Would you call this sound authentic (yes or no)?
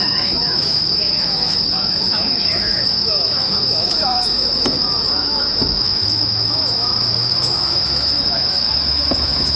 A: no